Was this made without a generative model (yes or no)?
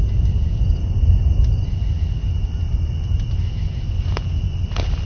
yes